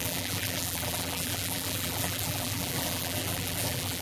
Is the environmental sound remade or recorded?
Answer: remade